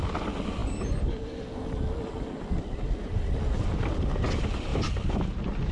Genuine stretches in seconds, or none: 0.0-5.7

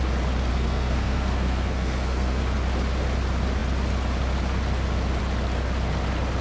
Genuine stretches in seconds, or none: 0.0-0.5; 2.4-6.4

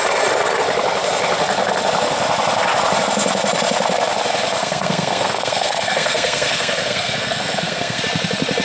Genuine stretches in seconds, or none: 0.0-4.6; 8.0-8.6

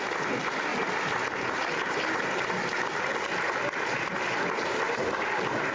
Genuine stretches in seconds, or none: 0.0-5.7